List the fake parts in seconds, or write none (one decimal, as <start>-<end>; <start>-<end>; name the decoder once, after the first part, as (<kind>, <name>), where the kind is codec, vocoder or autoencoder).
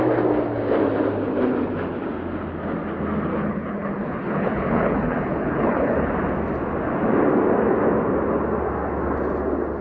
3.3-6.1 (codec, HILCodec)